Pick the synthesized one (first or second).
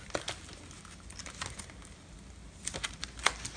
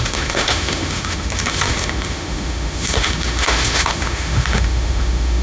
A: second